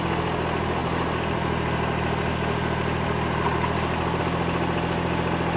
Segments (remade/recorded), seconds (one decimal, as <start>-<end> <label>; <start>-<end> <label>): 0.0-5.6 recorded